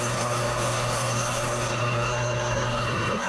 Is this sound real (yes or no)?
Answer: no